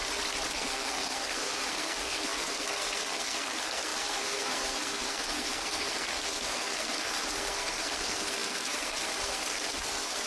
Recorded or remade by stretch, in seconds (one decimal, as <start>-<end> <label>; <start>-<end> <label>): 0.0-0.5 recorded; 0.5-10.3 remade